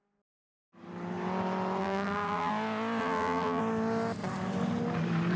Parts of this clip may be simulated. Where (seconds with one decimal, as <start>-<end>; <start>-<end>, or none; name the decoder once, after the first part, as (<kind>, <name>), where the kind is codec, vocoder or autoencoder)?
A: 1.8-2.5 (vocoder, BigVGAN v2); 3.0-3.6